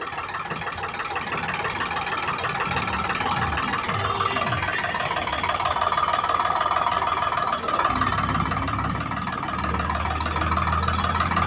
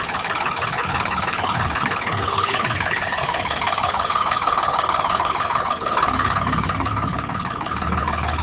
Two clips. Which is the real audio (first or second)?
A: first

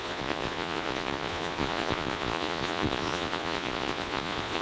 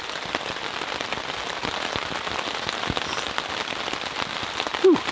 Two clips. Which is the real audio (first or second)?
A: second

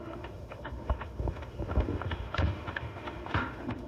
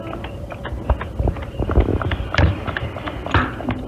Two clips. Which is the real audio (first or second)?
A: second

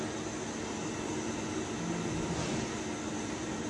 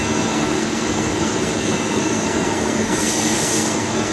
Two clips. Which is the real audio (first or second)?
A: first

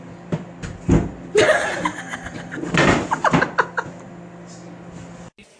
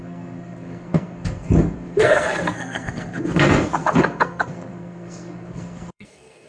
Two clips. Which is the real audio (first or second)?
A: first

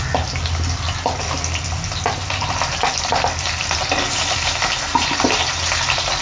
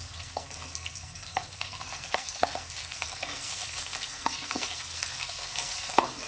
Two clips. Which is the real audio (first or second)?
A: first